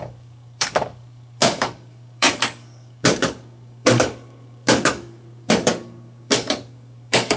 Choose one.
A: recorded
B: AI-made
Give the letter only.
B